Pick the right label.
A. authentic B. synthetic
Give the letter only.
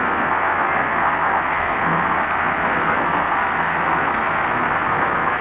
B